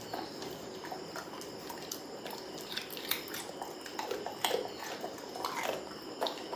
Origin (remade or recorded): recorded